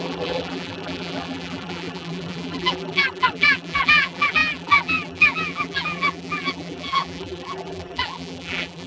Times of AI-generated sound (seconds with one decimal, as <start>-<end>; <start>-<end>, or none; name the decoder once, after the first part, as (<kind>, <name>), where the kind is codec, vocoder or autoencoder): 0.0-8.9 (vocoder, BigVGAN v2)